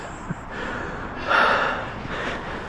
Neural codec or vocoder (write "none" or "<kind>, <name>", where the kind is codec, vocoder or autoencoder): none